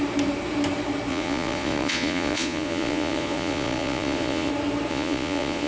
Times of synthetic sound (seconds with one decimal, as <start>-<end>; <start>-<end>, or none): 1.1-4.5; 4.9-5.7